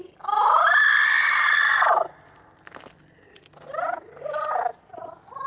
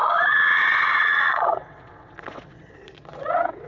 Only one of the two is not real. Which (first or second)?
second